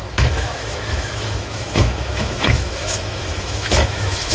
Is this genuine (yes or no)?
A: no